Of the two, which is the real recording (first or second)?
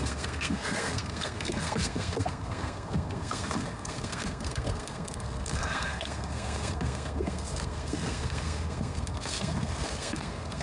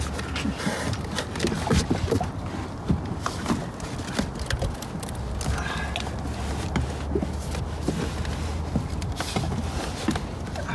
second